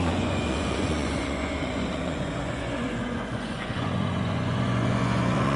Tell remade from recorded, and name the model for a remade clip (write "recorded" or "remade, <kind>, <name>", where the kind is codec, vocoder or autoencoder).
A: remade, vocoder, Vocos